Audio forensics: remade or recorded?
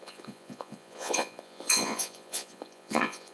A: remade